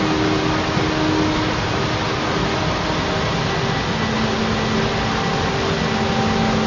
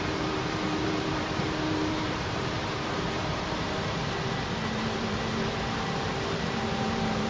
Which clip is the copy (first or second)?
second